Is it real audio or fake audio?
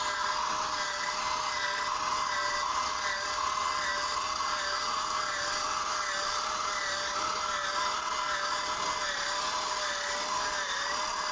real